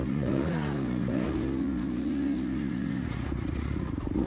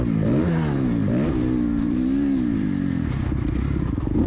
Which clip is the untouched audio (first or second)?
second